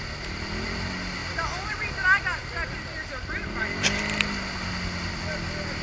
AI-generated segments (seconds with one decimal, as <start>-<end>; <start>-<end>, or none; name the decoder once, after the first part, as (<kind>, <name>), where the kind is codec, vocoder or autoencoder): none